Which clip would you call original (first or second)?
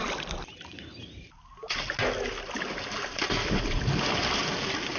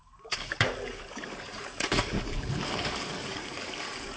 first